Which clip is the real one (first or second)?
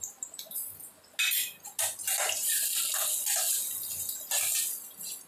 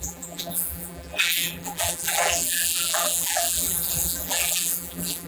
first